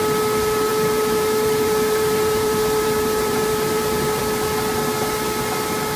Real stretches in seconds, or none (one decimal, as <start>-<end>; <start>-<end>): 0.0-0.7; 4.2-6.0

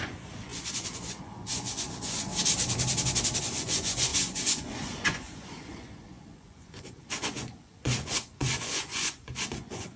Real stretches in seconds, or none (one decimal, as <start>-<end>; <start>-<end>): 2.3-3.4